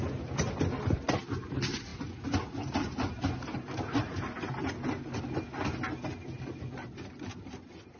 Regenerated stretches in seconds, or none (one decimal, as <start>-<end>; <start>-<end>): none